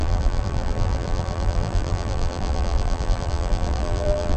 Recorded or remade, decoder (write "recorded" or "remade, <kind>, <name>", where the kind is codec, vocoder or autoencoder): remade, vocoder, BigVGAN v2